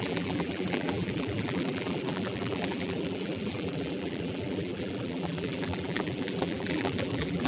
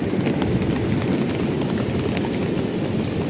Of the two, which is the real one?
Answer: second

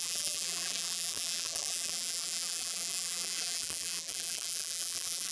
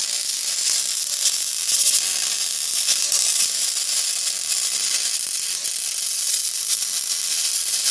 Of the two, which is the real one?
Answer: second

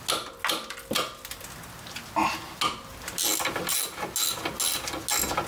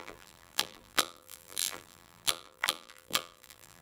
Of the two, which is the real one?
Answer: first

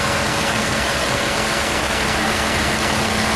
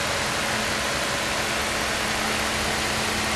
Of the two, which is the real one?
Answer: second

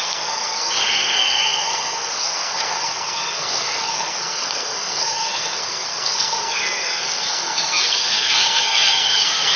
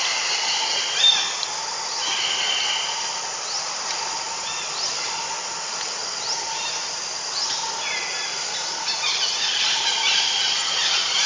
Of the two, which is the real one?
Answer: second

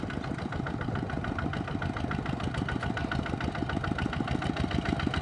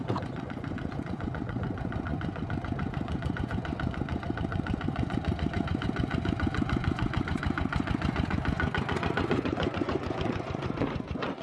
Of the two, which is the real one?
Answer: first